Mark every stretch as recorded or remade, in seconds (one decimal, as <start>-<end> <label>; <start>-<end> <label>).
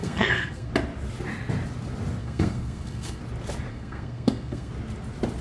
0.0-0.7 remade; 0.7-2.2 recorded; 2.2-3.2 remade; 3.2-3.7 recorded; 3.7-4.7 remade; 4.7-5.4 recorded